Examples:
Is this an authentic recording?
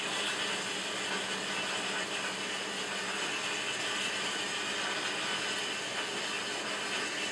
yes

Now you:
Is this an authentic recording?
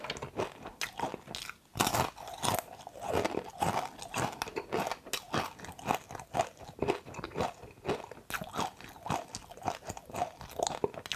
yes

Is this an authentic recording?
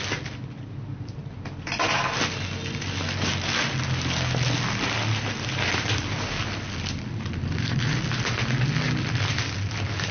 yes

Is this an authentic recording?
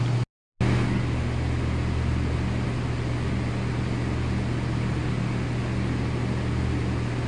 yes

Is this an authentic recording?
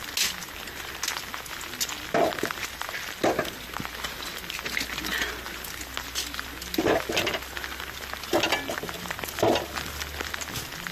yes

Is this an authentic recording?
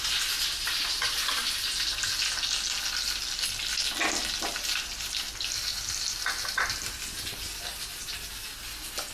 yes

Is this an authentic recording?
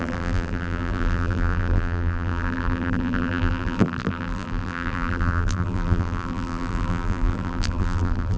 no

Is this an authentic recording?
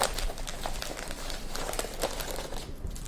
no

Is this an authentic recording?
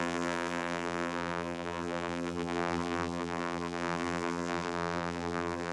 no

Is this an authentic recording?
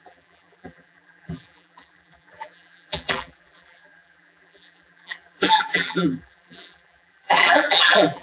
no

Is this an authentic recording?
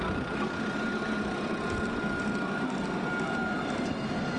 no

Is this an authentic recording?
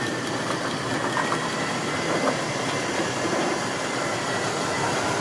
no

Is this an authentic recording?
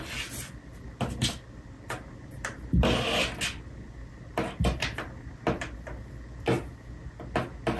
yes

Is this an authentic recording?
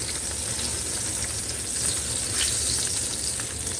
yes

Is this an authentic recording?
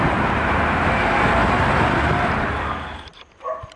no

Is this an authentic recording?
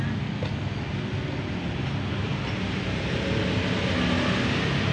yes